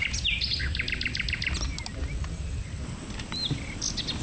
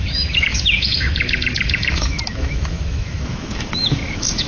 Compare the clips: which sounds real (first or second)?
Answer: first